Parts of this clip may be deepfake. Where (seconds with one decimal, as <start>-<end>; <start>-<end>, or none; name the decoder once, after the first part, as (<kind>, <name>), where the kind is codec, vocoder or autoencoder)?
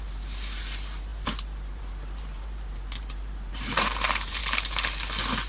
0.0-4.4 (vocoder, BigVGAN v2)